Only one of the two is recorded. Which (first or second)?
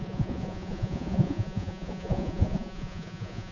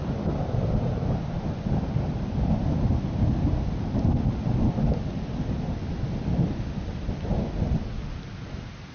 second